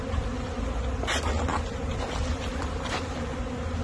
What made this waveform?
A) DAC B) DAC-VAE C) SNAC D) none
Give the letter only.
D